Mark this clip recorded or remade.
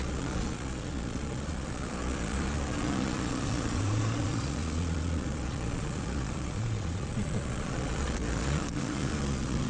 remade